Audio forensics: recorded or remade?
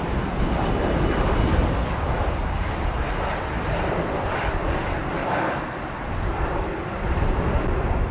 recorded